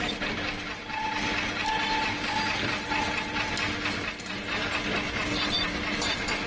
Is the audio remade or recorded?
recorded